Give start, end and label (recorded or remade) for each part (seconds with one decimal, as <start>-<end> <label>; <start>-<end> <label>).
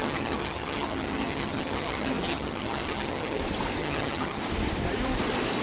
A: 0.0-3.4 remade; 3.4-3.8 recorded; 3.8-4.4 remade; 4.4-5.6 recorded